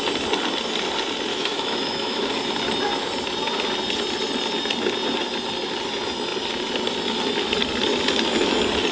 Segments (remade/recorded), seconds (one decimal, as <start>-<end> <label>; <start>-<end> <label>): 0.0-1.3 recorded; 1.3-2.3 remade; 2.3-8.9 recorded